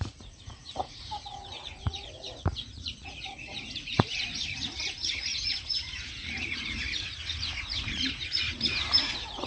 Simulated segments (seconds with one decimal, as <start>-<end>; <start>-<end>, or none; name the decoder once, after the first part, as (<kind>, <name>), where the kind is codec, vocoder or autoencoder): 0.0-9.5 (vocoder, Vocos)